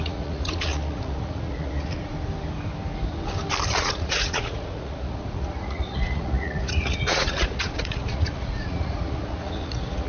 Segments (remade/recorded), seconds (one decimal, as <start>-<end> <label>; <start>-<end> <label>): 0.0-2.1 remade; 2.1-3.8 recorded; 3.8-10.1 remade

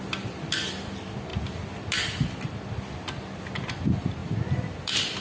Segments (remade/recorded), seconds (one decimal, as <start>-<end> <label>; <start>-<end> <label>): 0.0-5.2 recorded

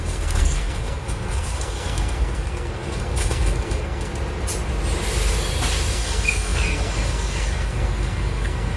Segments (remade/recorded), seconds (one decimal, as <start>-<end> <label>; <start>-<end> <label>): 0.0-4.1 remade; 4.1-5.9 recorded; 5.9-8.8 remade

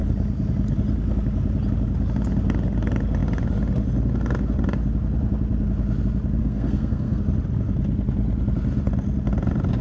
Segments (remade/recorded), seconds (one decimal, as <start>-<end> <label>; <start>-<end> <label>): 0.0-6.4 recorded; 6.4-7.2 remade; 7.2-9.8 recorded

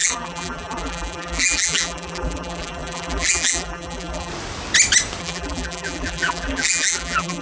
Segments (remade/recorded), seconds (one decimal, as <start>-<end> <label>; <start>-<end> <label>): 0.0-4.3 remade; 4.3-5.2 recorded; 5.2-7.4 remade